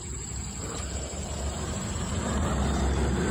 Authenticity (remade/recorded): remade